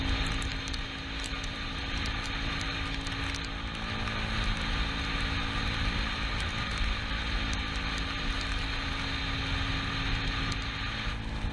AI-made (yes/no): no